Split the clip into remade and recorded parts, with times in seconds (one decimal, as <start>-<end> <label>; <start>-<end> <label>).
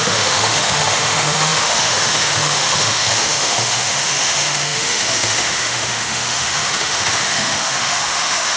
0.0-8.6 remade